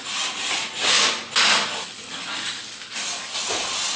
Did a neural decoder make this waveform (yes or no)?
no